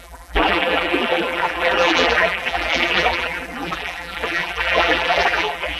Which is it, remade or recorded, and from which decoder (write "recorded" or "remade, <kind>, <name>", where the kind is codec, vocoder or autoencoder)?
remade, vocoder, BigVGAN v2